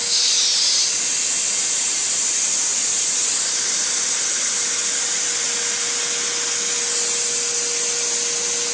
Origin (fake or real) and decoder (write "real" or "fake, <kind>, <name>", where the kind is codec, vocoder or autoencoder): real